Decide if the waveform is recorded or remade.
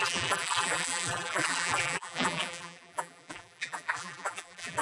remade